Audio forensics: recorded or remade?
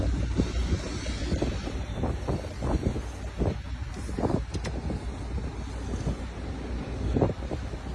recorded